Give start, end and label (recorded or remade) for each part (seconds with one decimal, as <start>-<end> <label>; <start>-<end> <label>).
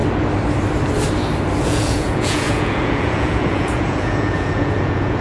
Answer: 0.0-1.6 recorded; 1.6-5.2 remade